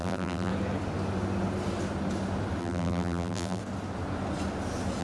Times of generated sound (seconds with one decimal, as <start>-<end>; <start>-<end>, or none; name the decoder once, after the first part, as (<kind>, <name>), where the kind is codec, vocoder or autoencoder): 0.0-0.5 (vocoder, BigVGAN v2); 2.6-3.6